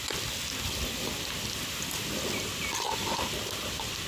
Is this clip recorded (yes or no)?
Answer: yes